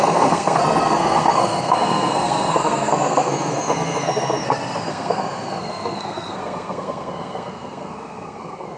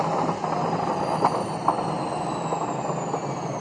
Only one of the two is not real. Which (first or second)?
first